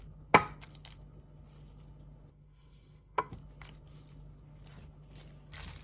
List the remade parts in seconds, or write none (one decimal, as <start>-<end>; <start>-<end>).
2.3-3.3